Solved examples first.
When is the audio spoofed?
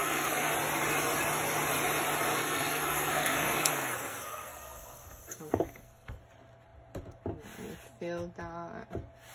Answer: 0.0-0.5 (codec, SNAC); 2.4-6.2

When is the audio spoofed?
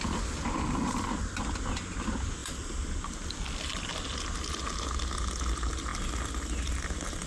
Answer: 2.4-3.9 (vocoder, BigVGAN v2); 5.9-7.3